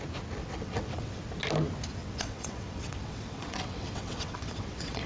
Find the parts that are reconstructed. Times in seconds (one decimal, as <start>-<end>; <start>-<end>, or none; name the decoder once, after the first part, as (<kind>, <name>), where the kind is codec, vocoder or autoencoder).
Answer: 0.4-1.2 (vocoder, WaveNeXt); 2.0-5.1